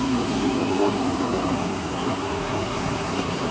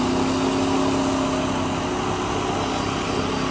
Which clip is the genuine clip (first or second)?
second